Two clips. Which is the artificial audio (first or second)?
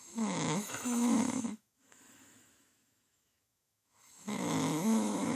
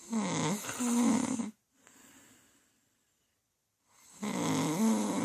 first